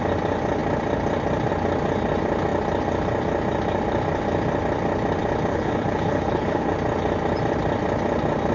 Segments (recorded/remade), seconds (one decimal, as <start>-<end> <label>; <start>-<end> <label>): 0.0-5.5 recorded; 5.5-6.7 remade; 6.7-8.5 recorded